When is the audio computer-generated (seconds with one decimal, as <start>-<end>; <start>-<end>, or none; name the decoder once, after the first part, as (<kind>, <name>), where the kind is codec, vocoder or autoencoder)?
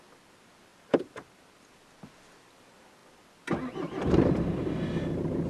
none